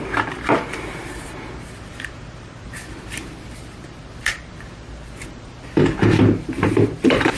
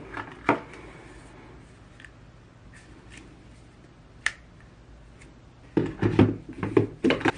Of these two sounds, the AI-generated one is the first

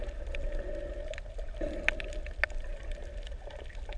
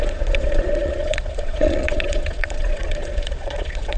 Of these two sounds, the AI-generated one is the second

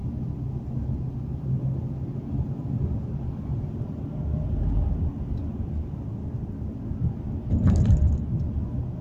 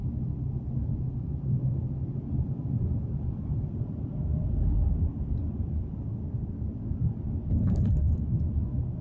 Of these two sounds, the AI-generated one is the second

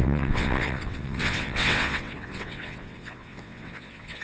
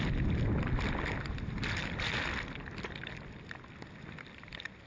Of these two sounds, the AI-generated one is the first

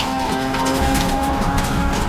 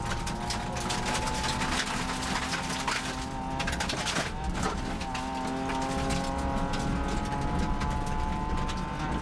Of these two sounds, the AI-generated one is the first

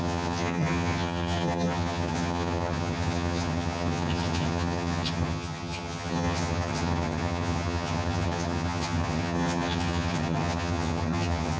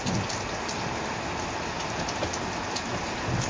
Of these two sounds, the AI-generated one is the first